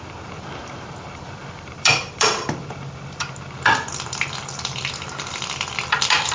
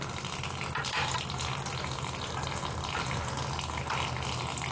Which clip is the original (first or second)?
second